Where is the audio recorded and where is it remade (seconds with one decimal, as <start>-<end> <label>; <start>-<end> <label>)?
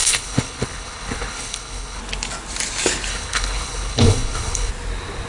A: 0.0-2.0 remade; 2.0-3.1 recorded; 3.1-4.7 remade; 4.7-5.3 recorded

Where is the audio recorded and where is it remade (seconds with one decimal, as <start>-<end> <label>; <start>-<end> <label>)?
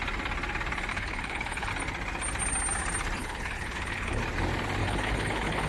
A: 0.0-0.9 recorded; 0.9-1.7 remade; 1.7-3.2 recorded; 3.2-4.2 remade; 4.2-4.8 recorded; 4.8-5.7 remade